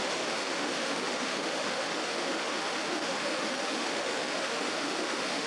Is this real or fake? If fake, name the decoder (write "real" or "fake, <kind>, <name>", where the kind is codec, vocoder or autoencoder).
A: fake, autoencoder, DAC-VAE